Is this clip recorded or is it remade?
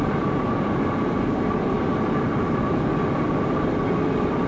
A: remade